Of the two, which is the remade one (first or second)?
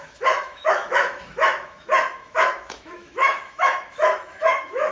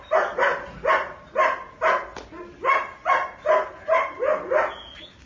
first